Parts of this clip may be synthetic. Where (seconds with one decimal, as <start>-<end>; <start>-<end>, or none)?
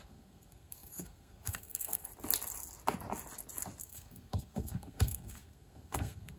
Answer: 0.0-2.1; 3.8-6.4